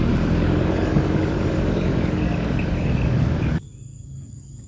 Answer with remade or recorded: remade